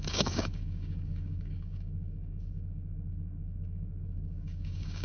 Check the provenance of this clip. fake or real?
fake